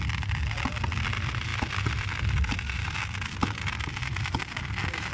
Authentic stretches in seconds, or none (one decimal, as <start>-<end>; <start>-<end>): 0.0-5.1